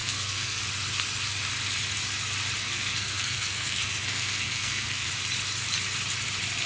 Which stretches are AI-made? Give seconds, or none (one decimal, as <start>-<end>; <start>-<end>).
0.0-0.6; 2.6-5.1